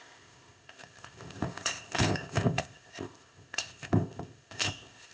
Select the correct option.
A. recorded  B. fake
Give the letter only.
B